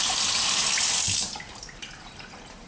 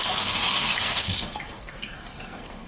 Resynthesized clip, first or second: second